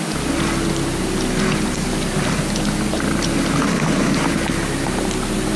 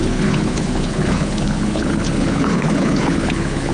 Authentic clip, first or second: first